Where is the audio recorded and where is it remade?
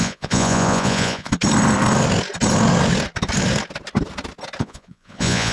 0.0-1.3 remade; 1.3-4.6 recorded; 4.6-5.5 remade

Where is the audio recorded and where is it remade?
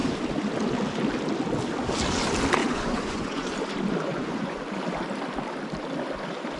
0.0-2.6 recorded; 2.6-3.5 remade; 3.5-4.1 recorded; 4.1-4.6 remade; 4.6-6.6 recorded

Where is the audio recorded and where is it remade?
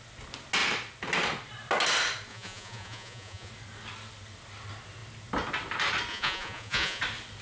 0.0-2.3 recorded; 2.3-3.5 remade; 3.5-6.1 recorded; 6.1-7.0 remade; 7.0-7.4 recorded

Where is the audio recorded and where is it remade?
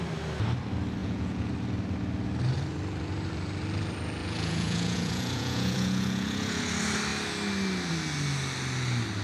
0.0-1.0 recorded; 1.0-1.5 remade; 1.5-4.2 recorded; 4.2-6.6 remade; 6.6-9.2 recorded